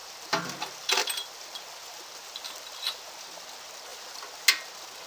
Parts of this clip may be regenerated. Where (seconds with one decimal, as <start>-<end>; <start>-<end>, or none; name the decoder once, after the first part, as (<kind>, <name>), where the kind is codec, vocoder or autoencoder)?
0.0-3.1 (vocoder, BigVGAN v2)